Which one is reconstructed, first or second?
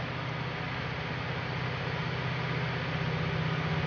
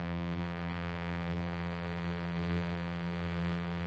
second